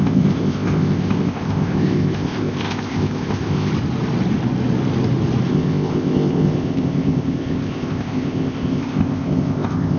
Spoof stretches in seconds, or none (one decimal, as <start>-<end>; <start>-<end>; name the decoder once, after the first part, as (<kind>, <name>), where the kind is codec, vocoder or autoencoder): 0.0-3.7 (codec, ZipCodec); 5.5-10.0

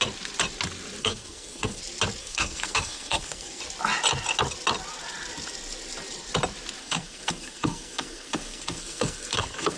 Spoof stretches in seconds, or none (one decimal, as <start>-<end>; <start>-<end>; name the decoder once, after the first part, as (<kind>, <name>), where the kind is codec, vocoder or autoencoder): 1.0-1.8 (codec, SNAC); 2.2-3.6; 6.8-9.8

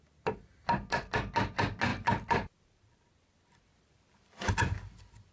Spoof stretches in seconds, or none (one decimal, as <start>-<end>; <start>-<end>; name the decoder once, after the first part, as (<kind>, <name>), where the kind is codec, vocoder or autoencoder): 1.9-3.0 (vocoder, BigVGAN v2); 3.7-4.5

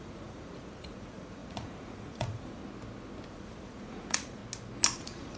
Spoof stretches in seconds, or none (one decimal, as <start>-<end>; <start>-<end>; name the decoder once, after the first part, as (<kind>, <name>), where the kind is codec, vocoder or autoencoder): 0.0-2.6 (vocoder, Vocos); 3.3-4.4; 5.0-5.4